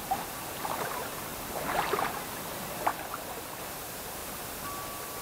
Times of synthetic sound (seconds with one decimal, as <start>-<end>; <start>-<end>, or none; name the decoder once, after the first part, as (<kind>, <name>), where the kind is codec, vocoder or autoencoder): 0.0-2.9 (vocoder, BigVGAN v2); 3.6-4.2